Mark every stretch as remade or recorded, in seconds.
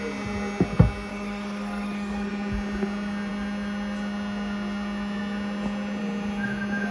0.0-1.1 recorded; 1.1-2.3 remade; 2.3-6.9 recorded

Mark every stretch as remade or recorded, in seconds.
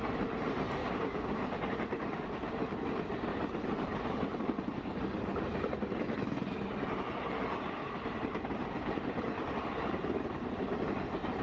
0.0-0.8 recorded; 0.8-1.5 remade; 1.5-11.4 recorded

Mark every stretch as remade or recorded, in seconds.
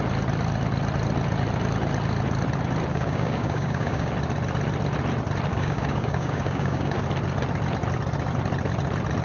0.0-2.9 recorded; 2.9-4.1 remade; 4.1-5.5 recorded; 5.5-7.0 remade; 7.0-9.2 recorded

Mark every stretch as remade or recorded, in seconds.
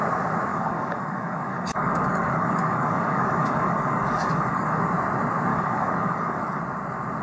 0.0-0.5 recorded; 0.5-4.8 remade; 4.8-5.5 recorded; 5.5-6.6 remade; 6.6-7.2 recorded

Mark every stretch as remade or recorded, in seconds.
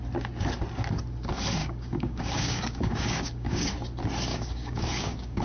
0.0-1.6 recorded; 1.6-3.7 remade; 3.7-4.3 recorded; 4.3-5.4 remade